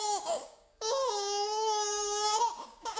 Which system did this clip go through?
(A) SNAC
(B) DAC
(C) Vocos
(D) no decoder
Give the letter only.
B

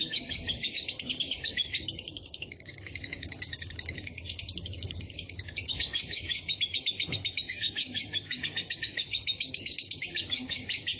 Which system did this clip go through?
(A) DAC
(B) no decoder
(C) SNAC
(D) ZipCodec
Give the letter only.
A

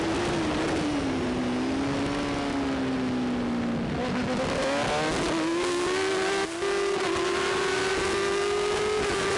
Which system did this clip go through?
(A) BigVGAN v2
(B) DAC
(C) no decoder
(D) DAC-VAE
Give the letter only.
C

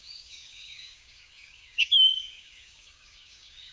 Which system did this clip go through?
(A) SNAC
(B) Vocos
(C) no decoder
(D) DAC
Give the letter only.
D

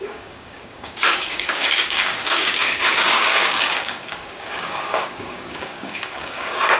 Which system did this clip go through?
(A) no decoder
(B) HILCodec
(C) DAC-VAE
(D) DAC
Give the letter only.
D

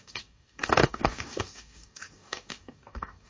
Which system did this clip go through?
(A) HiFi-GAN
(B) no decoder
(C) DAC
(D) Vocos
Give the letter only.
C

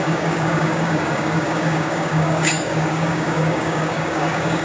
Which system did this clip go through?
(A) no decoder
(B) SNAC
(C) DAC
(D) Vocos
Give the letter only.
C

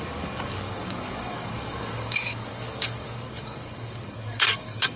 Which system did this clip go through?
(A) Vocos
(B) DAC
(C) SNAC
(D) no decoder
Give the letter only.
B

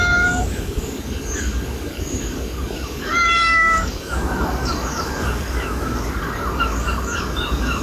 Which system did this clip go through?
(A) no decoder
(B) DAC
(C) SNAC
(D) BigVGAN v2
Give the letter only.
B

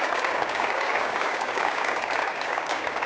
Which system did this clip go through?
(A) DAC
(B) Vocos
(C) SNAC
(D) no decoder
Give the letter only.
A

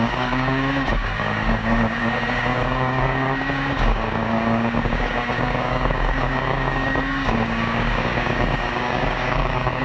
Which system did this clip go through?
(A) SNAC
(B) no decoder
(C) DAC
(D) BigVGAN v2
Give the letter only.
C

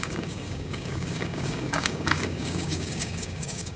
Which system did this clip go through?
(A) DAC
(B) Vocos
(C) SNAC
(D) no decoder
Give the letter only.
A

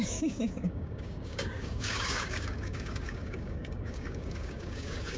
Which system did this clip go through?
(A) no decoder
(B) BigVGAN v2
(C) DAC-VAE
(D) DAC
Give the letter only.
D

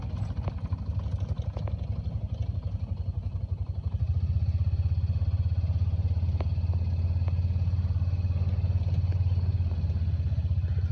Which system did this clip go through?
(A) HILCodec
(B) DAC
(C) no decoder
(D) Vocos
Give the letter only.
C